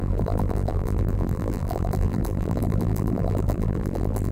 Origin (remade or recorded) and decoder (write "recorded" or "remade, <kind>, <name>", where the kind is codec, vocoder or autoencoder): remade, vocoder, BigVGAN v2